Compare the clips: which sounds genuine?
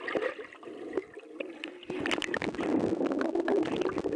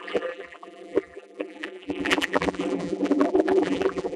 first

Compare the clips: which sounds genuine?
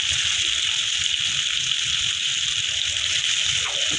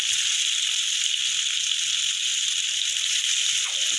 first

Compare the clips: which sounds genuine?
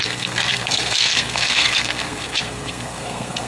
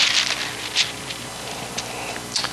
second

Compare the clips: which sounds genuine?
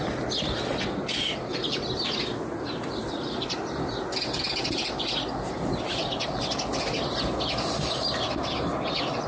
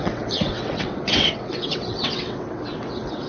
first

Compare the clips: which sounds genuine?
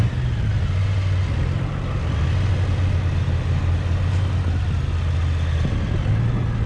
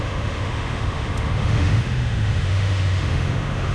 first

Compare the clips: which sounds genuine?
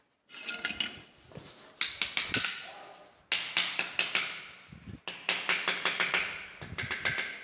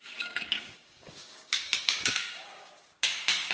first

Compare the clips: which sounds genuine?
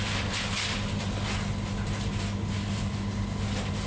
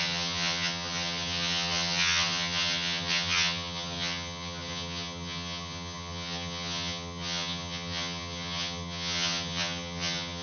first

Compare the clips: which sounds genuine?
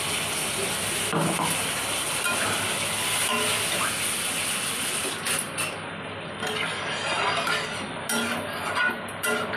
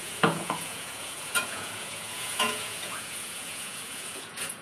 first